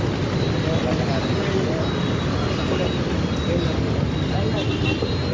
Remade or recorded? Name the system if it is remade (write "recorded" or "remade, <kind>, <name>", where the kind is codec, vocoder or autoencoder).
recorded